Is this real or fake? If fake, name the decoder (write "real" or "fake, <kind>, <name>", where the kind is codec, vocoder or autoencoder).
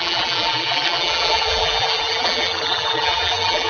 fake, vocoder, BigVGAN v2